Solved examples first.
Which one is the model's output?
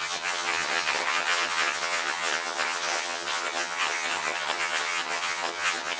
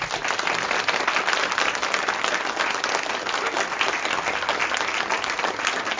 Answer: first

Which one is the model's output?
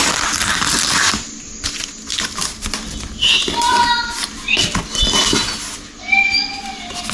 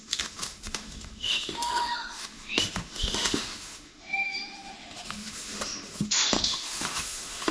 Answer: second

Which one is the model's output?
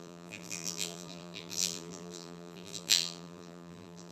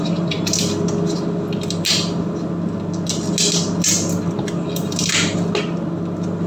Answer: first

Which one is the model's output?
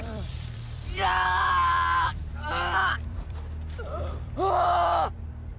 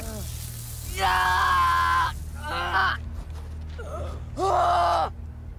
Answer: first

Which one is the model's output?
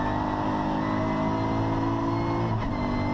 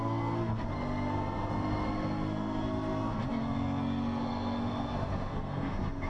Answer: second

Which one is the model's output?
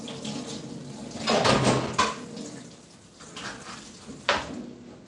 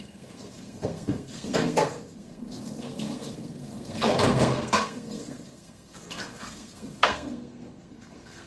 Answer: second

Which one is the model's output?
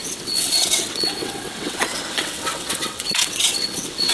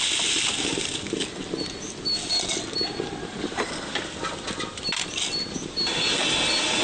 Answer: first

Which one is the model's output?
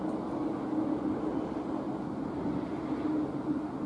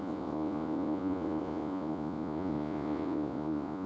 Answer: second